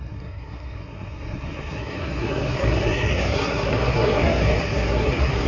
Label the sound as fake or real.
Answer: fake